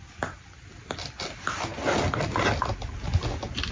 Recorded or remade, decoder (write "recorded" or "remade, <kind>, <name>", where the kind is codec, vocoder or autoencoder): recorded